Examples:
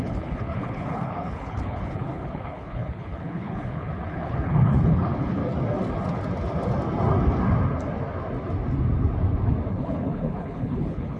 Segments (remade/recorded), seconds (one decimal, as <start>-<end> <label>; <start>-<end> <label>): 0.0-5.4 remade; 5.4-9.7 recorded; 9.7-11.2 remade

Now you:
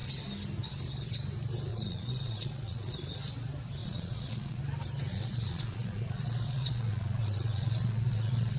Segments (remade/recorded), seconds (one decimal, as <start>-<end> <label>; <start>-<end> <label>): 0.0-1.7 recorded; 1.7-2.9 remade; 2.9-3.8 recorded; 3.8-4.6 remade; 4.6-5.1 recorded; 5.1-8.6 remade

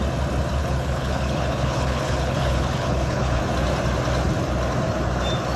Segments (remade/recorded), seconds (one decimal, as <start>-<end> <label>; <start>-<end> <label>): 0.0-0.6 recorded; 0.6-3.4 remade; 3.4-5.6 recorded